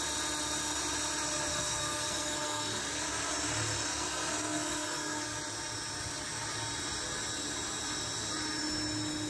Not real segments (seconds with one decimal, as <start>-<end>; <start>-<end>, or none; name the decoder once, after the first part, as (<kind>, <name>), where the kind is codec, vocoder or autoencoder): 1.5-2.8 (codec, SNAC); 3.9-5.2